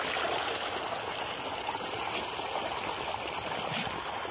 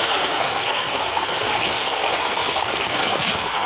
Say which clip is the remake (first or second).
second